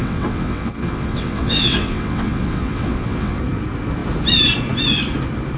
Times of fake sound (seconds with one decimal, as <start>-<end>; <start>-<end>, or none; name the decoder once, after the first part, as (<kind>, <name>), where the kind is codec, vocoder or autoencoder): 0.0-3.4 (vocoder, WaveNeXt)